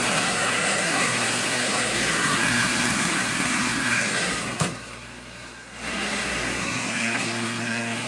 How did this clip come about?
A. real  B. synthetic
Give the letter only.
B